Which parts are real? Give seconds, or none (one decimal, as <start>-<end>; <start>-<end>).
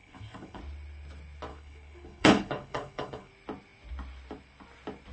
0.6-1.5; 3.3-5.1